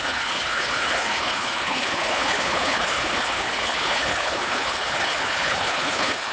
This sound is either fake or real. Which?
fake